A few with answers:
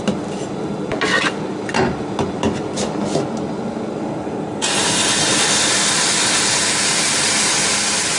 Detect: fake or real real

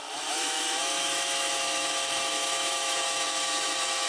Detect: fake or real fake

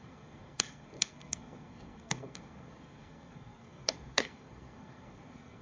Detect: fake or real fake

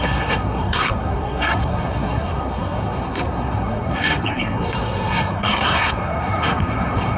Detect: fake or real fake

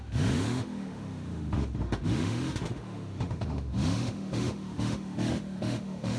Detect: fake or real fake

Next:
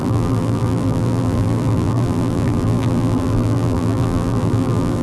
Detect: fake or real fake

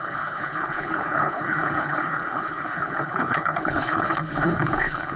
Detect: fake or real fake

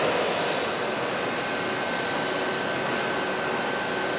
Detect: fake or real real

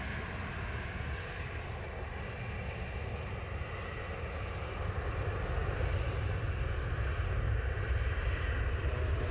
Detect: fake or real real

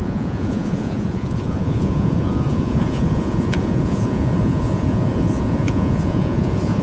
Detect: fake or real fake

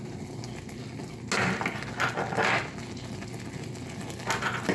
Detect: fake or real real